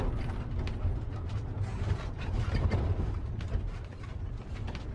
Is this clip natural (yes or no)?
yes